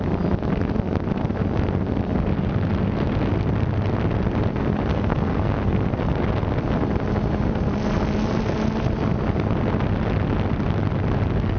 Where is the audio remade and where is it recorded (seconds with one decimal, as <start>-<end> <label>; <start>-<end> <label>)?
0.0-4.9 recorded; 4.9-5.9 remade; 5.9-11.6 recorded